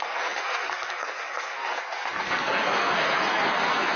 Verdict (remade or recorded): remade